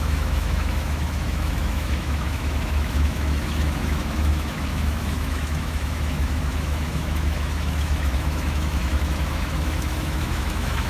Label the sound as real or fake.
fake